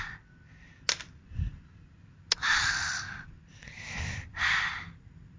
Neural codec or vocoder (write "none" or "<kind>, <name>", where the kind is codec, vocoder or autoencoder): none